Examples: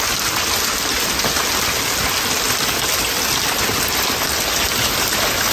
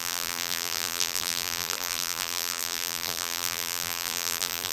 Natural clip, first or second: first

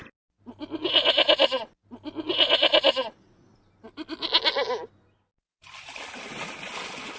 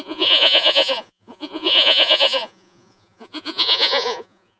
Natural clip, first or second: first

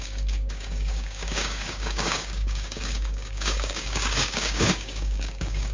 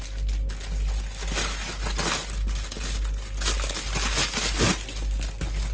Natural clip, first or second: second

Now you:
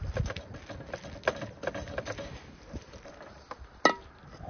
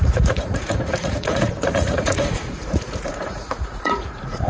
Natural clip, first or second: first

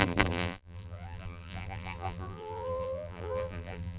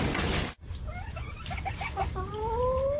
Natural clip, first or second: second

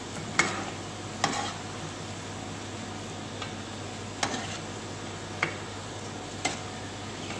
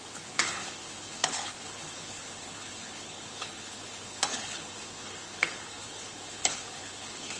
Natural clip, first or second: first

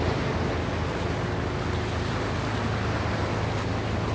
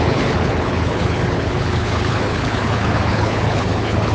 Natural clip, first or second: first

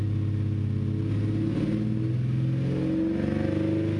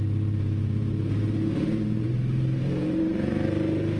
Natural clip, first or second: first